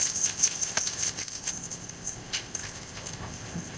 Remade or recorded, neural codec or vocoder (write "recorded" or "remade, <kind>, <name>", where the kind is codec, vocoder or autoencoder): remade, codec, ZipCodec